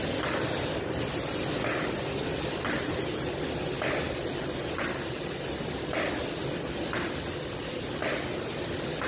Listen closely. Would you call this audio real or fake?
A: real